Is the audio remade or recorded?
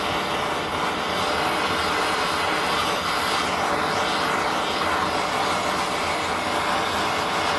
recorded